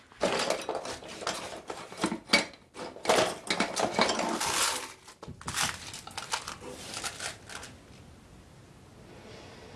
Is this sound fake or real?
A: real